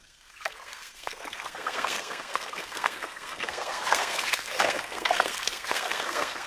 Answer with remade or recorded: remade